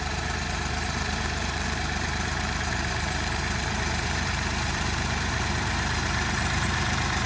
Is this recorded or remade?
remade